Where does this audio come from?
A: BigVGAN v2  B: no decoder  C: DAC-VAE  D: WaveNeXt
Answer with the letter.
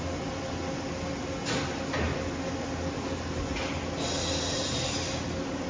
B